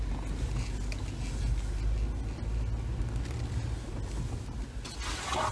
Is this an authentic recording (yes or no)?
yes